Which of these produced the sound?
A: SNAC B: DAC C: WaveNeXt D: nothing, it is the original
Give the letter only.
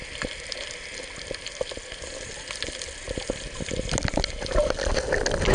D